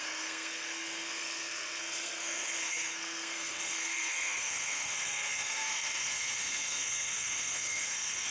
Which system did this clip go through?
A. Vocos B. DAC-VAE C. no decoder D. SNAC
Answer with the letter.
D